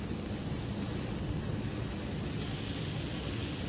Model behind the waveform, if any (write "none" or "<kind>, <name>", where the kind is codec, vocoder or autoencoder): none